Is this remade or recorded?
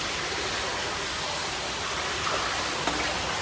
recorded